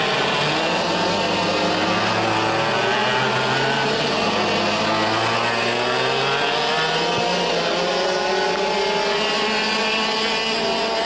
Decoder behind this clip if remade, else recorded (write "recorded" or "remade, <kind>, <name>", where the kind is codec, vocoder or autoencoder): recorded